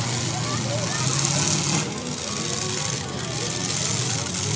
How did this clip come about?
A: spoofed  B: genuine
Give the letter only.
B